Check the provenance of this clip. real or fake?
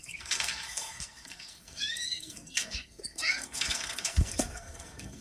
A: fake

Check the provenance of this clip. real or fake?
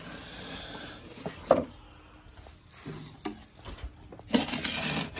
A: real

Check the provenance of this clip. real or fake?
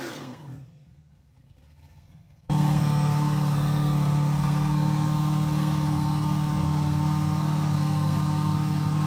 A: fake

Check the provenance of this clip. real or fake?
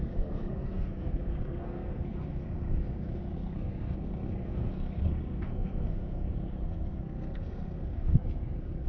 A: fake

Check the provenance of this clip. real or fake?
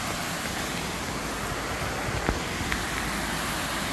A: real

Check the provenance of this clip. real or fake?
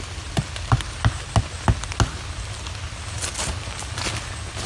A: real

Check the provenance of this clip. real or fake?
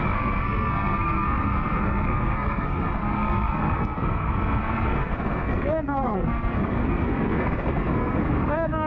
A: fake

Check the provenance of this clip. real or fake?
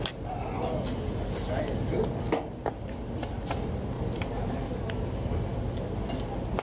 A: real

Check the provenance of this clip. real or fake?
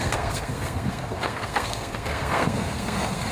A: fake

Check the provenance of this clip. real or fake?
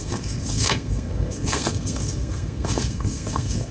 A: fake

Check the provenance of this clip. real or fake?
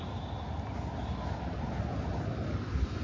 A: real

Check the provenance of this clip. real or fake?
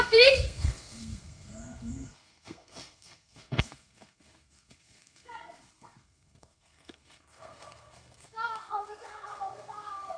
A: fake